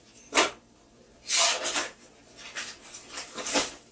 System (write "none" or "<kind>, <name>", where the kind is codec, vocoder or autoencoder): vocoder, BigVGAN v2